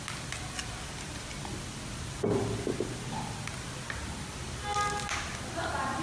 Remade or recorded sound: recorded